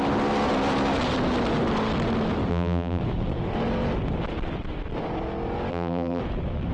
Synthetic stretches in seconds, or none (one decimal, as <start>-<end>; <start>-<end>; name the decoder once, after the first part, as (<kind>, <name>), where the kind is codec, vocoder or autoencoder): 2.5-3.0 (vocoder, BigVGAN v2); 5.7-6.2